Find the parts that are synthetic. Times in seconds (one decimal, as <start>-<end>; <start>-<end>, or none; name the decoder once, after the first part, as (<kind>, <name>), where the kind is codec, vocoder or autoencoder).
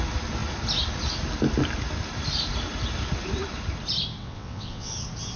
4.2-4.9 (vocoder, WaveNeXt)